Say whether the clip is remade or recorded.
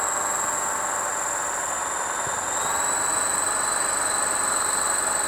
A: recorded